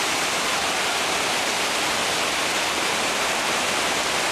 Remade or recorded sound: recorded